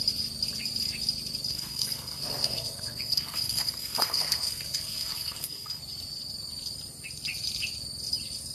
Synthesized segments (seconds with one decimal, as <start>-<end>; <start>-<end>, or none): 1.5-5.8